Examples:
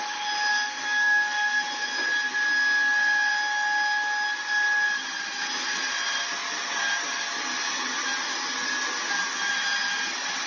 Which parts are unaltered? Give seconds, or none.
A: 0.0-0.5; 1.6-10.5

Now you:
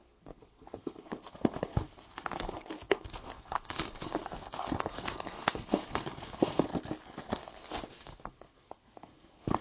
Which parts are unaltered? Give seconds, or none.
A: 6.7-7.3

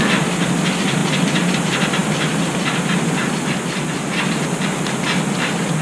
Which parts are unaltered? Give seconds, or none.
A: 0.0-5.8

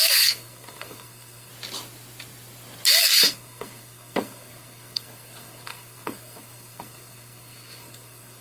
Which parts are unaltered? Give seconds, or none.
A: 1.5-3.0

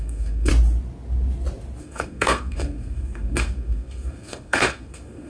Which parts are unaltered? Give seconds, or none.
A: 0.5-1.8

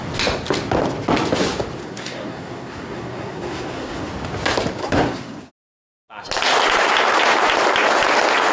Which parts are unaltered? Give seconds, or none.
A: 0.0-1.8; 4.1-4.8; 5.5-8.5